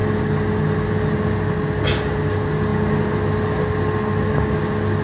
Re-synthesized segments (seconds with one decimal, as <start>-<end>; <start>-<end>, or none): none